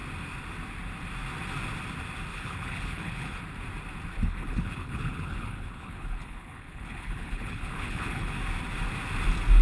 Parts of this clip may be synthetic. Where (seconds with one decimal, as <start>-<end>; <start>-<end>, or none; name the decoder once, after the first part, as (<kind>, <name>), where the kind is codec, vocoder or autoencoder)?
2.3-3.4 (codec, HILCodec); 4.1-8.3